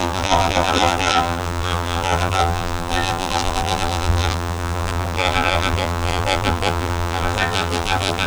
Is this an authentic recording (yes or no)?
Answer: no